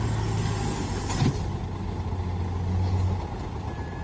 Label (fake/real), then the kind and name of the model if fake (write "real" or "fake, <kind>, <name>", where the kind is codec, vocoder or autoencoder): real